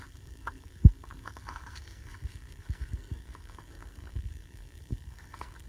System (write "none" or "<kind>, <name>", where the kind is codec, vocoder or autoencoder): codec, SNAC